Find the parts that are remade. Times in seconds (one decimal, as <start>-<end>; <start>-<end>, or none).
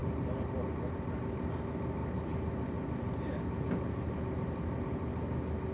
none